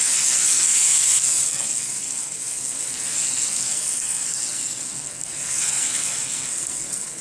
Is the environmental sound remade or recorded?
remade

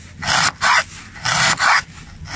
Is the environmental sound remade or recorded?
recorded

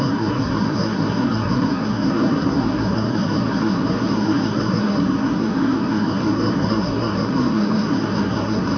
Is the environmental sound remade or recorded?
remade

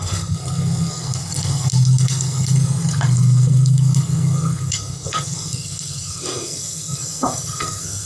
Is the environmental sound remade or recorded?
remade